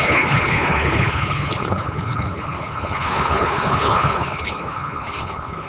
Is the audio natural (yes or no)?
no